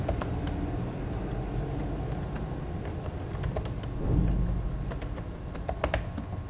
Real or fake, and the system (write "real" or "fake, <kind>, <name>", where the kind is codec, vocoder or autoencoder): real